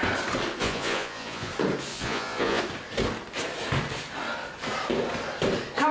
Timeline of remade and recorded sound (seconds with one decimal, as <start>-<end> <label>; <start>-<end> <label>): 0.0-0.6 recorded; 0.6-1.5 remade; 1.5-1.9 recorded; 1.9-2.6 remade; 2.6-5.9 recorded